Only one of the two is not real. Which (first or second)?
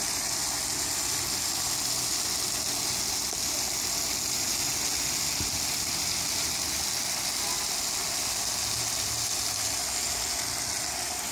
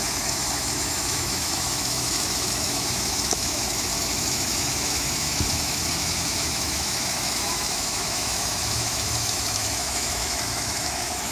second